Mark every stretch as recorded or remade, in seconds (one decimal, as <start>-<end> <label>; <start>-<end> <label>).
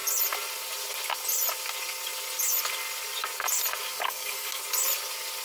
0.0-3.9 recorded; 3.9-4.6 remade; 4.6-5.4 recorded